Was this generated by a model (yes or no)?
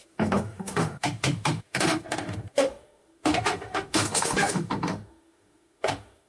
yes